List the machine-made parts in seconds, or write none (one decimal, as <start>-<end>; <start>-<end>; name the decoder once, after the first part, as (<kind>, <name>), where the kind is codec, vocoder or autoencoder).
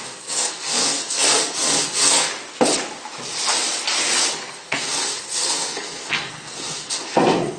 0.0-2.3 (codec, SNAC); 4.3-7.6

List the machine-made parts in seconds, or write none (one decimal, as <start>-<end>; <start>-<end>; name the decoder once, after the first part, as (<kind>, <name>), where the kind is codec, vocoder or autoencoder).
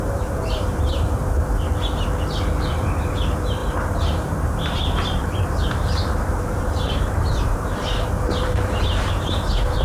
0.0-1.7 (vocoder, BigVGAN v2); 2.7-9.8